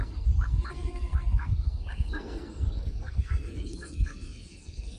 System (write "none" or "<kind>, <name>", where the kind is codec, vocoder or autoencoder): codec, SNAC